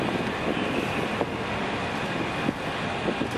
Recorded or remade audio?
recorded